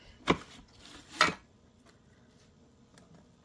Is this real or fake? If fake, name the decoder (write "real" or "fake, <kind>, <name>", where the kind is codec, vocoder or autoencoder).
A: real